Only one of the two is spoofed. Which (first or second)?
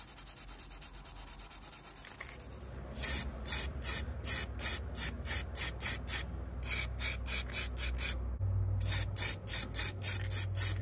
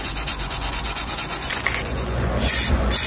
second